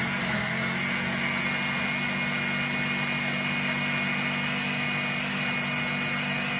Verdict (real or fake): real